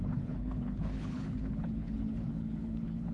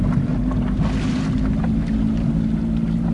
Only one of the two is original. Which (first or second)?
second